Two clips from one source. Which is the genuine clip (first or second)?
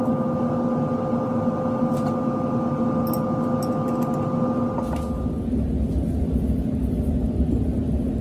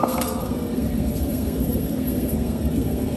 first